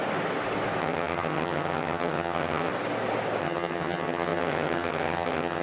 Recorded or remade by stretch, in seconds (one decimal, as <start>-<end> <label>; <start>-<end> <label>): 0.0-0.8 recorded; 0.8-2.7 remade; 2.7-3.4 recorded; 3.4-5.6 remade